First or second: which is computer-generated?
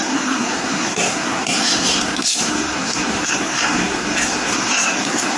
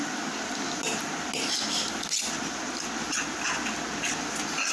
first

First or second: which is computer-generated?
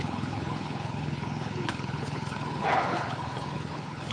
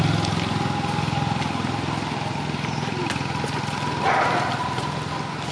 first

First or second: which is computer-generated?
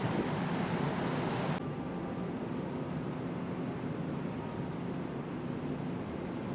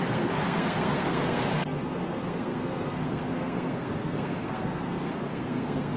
second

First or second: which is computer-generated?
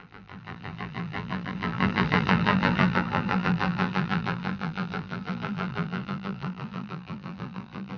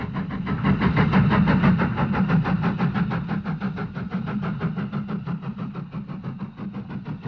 first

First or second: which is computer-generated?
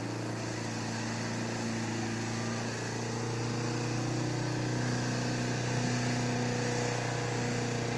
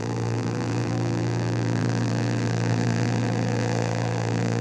second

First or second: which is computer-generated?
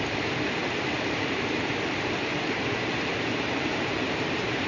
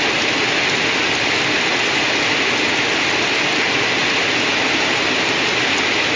first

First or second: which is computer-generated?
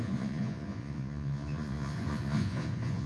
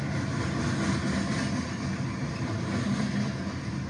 first